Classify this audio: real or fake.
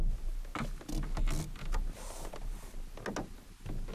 real